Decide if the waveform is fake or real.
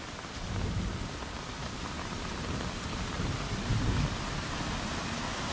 fake